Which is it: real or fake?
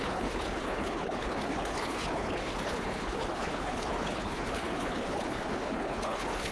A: fake